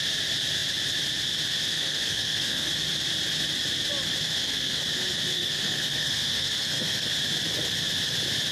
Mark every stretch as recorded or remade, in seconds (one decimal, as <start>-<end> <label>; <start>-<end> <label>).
0.0-1.7 recorded; 1.7-2.7 remade; 2.7-4.3 recorded; 4.3-4.8 remade; 4.8-5.3 recorded; 5.3-7.1 remade; 7.1-8.5 recorded